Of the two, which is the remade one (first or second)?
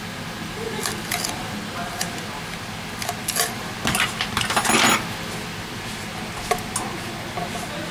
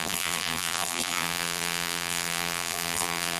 second